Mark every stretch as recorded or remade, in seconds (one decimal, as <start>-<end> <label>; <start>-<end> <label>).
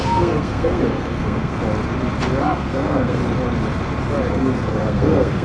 0.0-1.6 remade; 1.6-2.4 recorded; 2.4-3.2 remade; 3.2-4.3 recorded; 4.3-5.4 remade